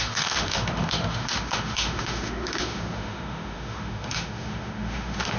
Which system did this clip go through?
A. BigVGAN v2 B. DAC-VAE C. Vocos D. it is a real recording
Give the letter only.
B